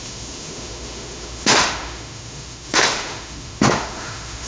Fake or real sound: fake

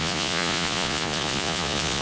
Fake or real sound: fake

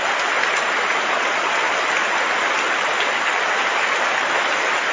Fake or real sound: real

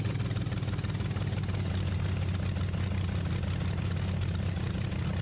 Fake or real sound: real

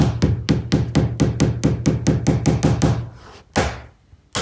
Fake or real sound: real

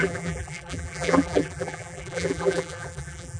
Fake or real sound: fake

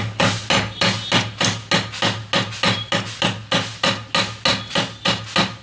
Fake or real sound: real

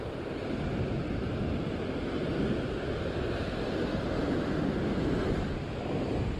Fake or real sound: real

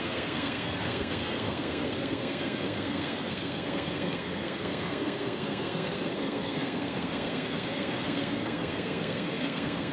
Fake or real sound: fake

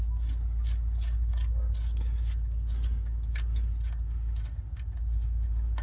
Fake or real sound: real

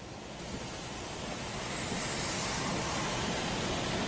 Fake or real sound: real